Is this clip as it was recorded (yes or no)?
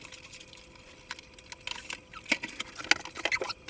yes